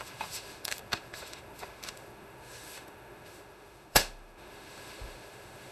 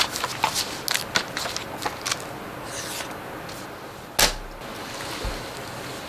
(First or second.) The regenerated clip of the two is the first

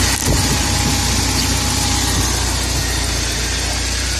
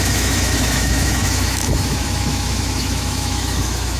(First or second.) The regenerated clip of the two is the second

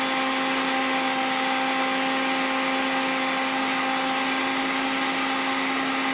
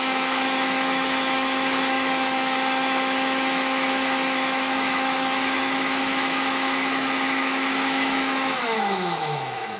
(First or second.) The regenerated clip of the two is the second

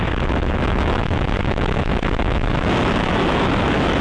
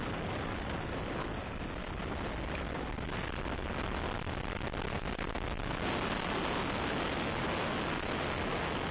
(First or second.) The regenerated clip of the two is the first